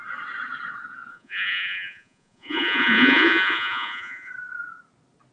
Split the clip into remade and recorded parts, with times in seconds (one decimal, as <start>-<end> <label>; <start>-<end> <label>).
0.0-1.1 recorded; 1.1-4.3 remade; 4.3-5.3 recorded